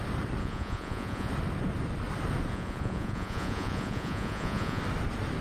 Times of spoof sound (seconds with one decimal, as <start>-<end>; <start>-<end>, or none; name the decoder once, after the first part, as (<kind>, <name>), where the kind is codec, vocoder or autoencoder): 0.4-1.3 (vocoder, Vocos); 2.5-4.8